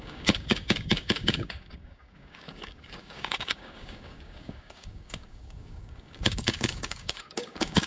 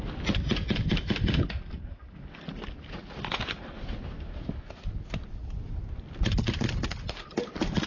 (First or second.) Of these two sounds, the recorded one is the second